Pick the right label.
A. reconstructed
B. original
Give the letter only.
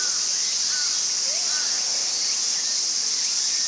B